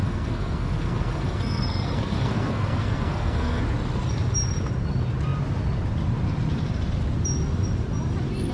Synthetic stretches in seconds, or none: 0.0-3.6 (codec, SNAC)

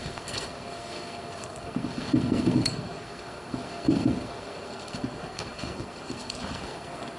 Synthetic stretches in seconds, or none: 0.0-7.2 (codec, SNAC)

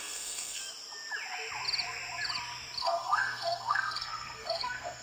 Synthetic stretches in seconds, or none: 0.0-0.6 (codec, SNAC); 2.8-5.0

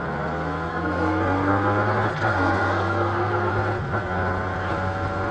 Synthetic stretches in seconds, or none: 0.7-1.5 (codec, SNAC); 2.1-3.5

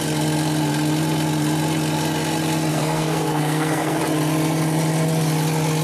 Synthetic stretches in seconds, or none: 2.7-4.0 (codec, SNAC)